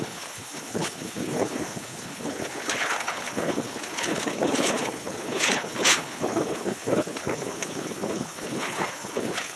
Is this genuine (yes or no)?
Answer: no